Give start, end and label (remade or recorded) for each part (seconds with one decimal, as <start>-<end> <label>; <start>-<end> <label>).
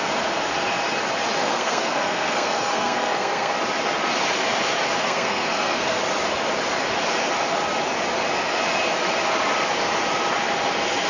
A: 0.0-1.4 recorded; 1.4-3.5 remade; 3.5-5.0 recorded; 5.0-6.0 remade; 6.0-11.1 recorded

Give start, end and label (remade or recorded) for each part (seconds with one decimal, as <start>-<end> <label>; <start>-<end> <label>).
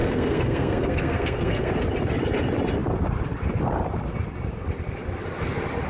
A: 0.0-1.7 remade; 1.7-5.9 recorded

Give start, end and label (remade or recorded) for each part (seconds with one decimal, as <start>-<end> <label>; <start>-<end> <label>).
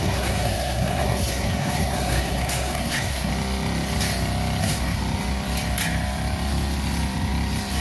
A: 0.0-3.3 remade; 3.3-4.6 recorded; 4.6-5.0 remade; 5.0-7.8 recorded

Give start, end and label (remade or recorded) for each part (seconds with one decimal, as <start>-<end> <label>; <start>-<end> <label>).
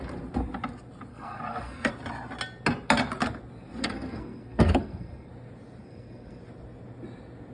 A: 0.0-1.1 recorded; 1.1-1.9 remade; 1.9-3.8 recorded; 3.8-5.3 remade; 5.3-5.8 recorded; 5.8-6.4 remade; 6.4-7.5 recorded